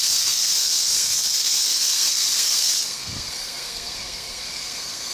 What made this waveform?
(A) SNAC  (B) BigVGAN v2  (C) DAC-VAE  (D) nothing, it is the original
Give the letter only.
A